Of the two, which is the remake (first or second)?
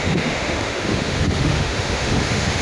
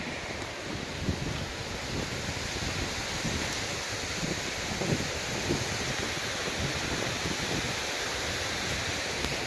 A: first